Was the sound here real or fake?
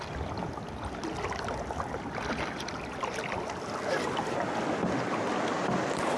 real